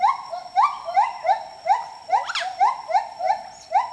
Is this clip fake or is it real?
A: real